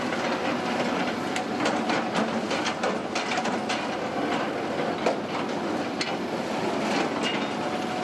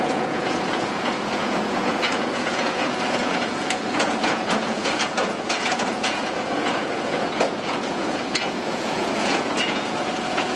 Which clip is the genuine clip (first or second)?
first